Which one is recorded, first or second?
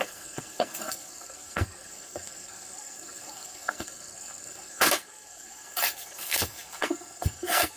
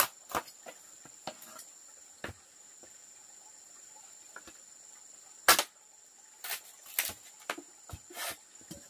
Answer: second